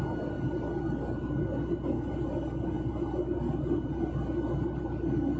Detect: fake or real real